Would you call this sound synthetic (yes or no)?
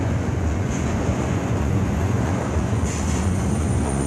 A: yes